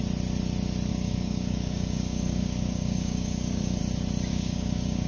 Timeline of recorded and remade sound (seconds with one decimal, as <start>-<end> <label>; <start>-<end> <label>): 0.0-0.9 recorded; 0.9-3.8 remade; 3.8-4.3 recorded; 4.3-5.1 remade